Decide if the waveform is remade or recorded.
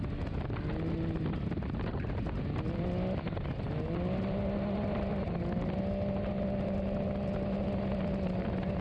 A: recorded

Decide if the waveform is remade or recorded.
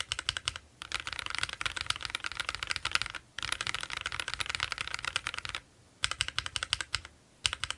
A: recorded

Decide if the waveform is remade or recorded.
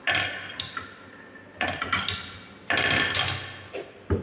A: recorded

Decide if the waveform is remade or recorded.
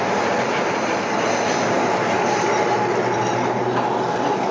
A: recorded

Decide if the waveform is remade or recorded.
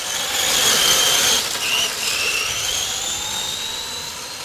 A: recorded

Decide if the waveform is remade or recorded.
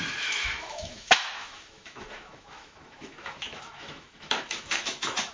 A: remade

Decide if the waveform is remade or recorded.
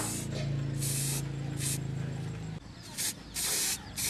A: recorded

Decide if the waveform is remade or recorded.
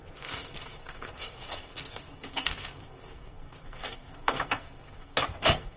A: remade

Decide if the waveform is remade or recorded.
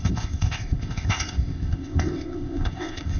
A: remade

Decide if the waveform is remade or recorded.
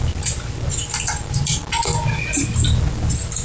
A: recorded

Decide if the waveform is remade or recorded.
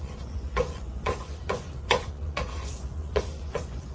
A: remade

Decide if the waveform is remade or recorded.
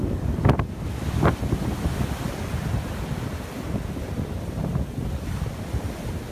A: recorded